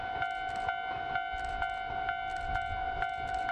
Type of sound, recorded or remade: recorded